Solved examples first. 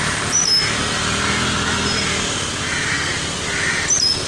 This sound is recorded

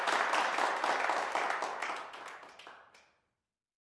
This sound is recorded